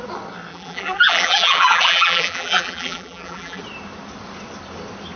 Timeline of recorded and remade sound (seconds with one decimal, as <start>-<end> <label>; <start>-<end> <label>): 0.0-0.5 recorded; 0.5-3.6 remade; 3.6-5.2 recorded